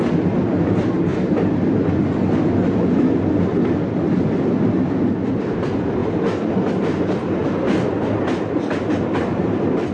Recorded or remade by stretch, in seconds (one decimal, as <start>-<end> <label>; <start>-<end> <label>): 0.0-9.9 recorded